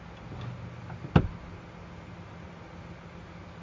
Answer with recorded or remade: recorded